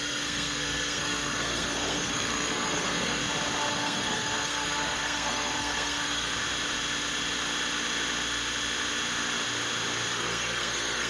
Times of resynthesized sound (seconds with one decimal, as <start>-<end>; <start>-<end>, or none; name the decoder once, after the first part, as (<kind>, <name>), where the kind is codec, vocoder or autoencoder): 0.0-3.2 (codec, SNAC); 3.7-6.3; 10.1-11.1